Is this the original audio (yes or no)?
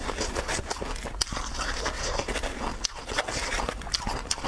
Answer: yes